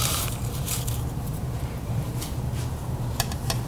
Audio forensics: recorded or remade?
remade